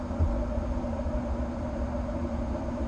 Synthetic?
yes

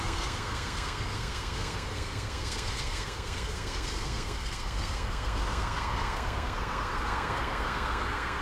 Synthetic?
yes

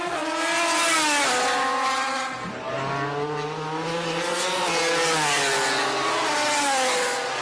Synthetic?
no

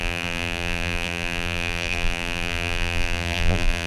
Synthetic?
yes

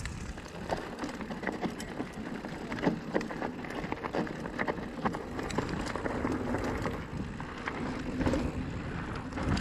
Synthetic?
no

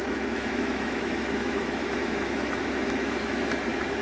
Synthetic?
yes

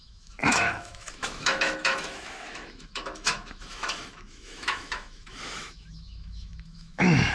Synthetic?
yes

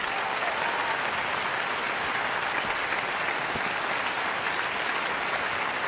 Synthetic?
no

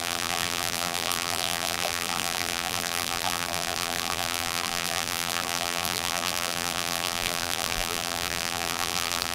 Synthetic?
yes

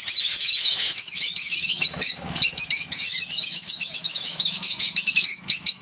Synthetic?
yes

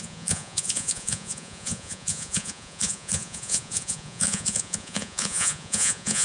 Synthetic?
yes